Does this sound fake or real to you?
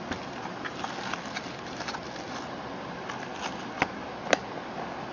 real